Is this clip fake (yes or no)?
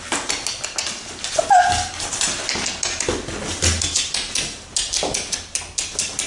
no